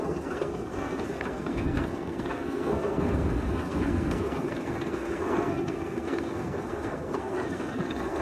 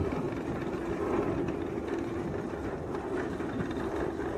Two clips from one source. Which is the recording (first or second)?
second